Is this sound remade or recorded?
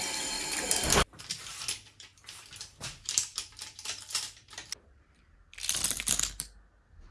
remade